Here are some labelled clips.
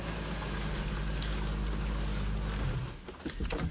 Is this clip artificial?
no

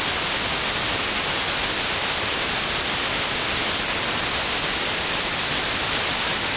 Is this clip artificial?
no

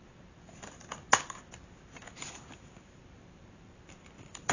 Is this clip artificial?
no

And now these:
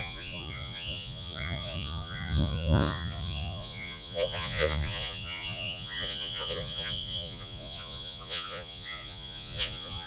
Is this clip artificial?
yes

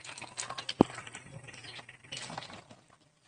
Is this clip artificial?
no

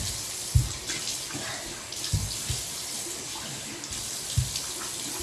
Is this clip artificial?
no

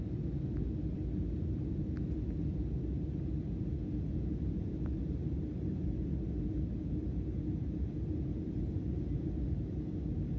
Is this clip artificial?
no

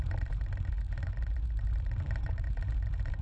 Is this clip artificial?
yes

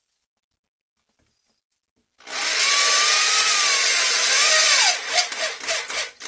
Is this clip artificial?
no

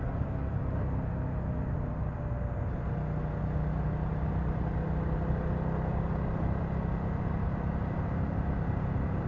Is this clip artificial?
no